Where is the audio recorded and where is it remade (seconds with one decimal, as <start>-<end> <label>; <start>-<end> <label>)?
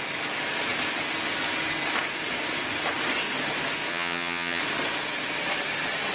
0.0-3.9 recorded; 3.9-4.6 remade; 4.6-6.1 recorded